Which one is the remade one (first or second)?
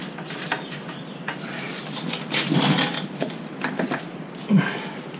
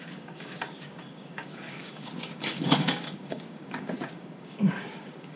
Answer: second